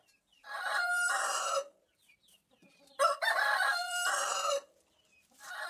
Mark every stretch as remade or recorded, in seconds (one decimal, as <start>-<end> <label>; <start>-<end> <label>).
0.0-5.7 remade